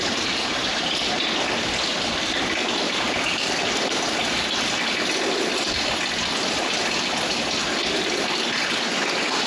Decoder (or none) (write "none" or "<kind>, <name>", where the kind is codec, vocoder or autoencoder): none